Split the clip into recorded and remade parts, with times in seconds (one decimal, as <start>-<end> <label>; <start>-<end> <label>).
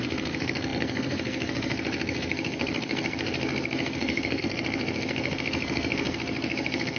0.0-7.0 remade